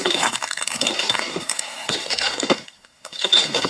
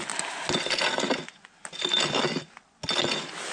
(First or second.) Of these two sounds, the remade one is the first